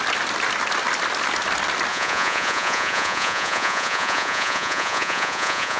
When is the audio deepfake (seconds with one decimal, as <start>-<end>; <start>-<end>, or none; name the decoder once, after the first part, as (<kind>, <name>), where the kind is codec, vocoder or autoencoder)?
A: 1.9-5.8 (vocoder, Vocos)